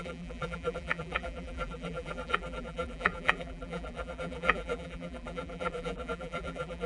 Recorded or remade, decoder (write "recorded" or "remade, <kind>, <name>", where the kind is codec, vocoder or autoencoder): remade, vocoder, BigVGAN v2